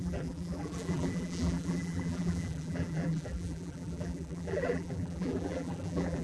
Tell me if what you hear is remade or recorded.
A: remade